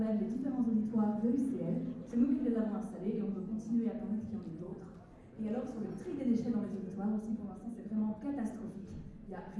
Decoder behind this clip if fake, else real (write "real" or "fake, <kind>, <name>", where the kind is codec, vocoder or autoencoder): real